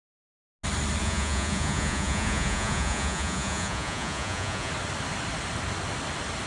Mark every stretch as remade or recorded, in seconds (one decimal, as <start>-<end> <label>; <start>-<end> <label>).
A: 0.0-1.0 recorded; 1.0-4.7 remade; 4.7-6.5 recorded